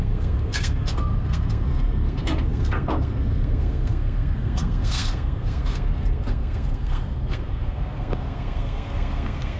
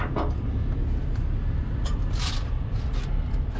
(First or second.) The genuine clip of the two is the second